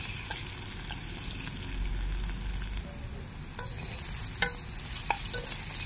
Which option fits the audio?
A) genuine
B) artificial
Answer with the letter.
A